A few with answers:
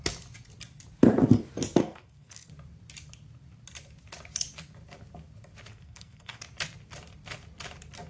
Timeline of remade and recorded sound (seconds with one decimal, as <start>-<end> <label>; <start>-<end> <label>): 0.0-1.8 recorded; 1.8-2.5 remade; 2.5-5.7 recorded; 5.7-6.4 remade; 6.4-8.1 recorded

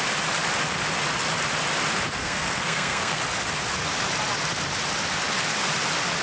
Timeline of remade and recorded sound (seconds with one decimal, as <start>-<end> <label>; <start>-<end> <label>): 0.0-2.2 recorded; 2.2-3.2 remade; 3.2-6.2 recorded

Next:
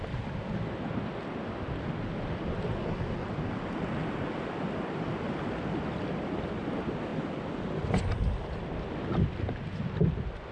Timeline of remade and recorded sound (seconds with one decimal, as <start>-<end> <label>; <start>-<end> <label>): 0.0-10.5 recorded